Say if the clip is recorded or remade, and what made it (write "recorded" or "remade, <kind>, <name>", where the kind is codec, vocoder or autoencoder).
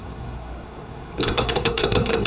remade, codec, SNAC